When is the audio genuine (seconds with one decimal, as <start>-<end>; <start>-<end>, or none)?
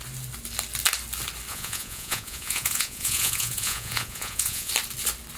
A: 0.0-1.5; 4.7-5.4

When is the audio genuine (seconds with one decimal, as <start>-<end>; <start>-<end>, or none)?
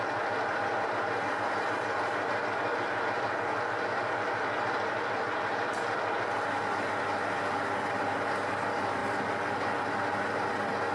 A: 0.0-10.9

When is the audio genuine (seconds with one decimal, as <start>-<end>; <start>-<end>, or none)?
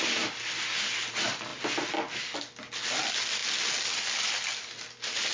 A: 0.0-5.3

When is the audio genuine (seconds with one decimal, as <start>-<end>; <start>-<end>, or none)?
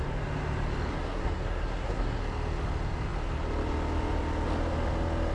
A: 0.0-0.9; 2.2-5.3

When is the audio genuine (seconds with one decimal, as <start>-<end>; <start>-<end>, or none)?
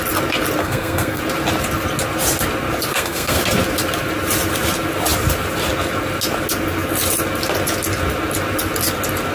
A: 0.0-0.6; 1.2-2.9; 3.4-9.3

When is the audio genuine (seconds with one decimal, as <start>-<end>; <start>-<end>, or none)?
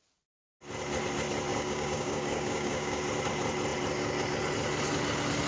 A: 0.0-1.5; 3.0-5.5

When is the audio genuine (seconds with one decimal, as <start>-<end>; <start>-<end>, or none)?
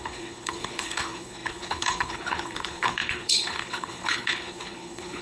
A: none